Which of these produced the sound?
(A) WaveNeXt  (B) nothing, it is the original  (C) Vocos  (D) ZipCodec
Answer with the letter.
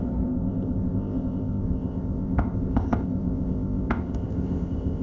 D